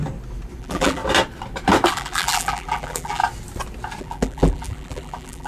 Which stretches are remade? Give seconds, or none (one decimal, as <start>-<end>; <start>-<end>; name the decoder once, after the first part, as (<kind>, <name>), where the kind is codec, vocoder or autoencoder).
0.6-1.0 (vocoder, BigVGAN v2); 1.9-3.2; 4.0-5.5